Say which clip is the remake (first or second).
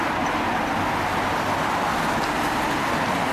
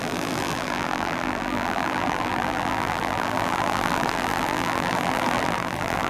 second